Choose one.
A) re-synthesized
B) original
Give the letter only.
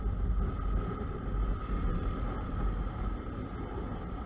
B